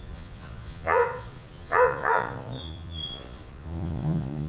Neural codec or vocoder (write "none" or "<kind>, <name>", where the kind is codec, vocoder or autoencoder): vocoder, Vocos